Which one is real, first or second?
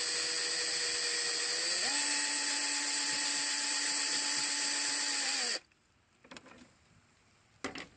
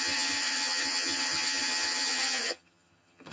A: first